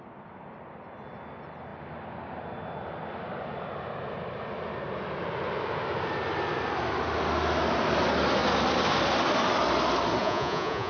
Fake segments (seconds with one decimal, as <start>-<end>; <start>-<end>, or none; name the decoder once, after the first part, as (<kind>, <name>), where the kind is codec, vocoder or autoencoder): 10.2-10.9 (vocoder, Vocos)